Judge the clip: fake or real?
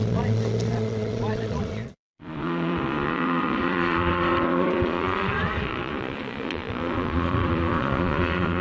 fake